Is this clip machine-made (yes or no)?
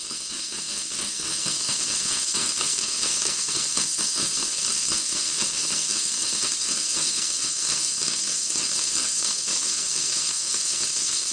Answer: yes